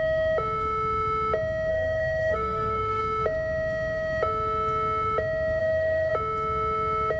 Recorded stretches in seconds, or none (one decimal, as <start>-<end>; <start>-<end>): 0.0-1.7; 3.0-5.6; 6.1-7.2